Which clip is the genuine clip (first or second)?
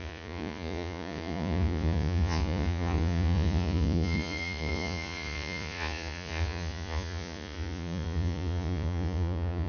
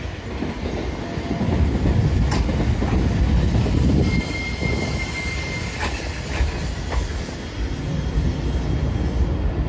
second